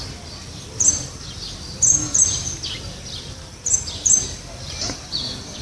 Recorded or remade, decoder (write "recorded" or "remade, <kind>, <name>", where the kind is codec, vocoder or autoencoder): recorded